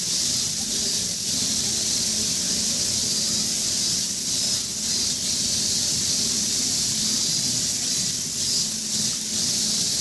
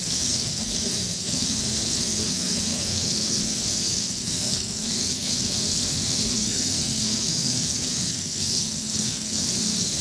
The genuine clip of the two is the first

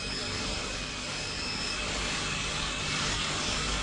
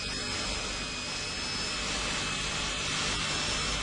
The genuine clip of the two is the second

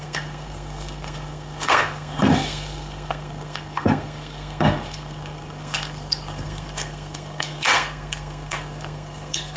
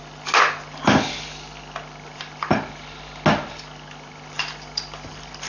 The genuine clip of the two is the second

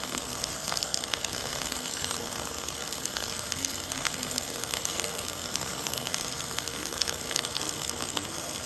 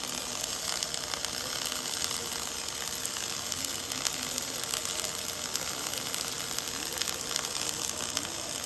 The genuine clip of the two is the second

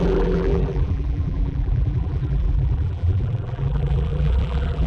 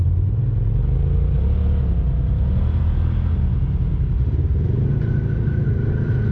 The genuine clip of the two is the second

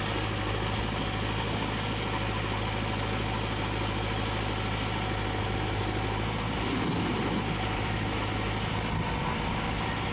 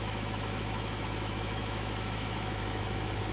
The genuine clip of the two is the first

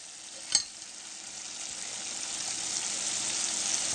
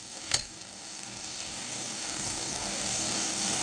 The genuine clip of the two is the first